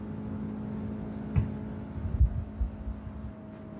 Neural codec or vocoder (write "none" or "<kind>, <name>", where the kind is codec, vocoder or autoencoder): none